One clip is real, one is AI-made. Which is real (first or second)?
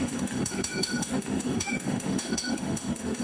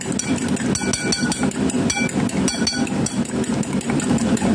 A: second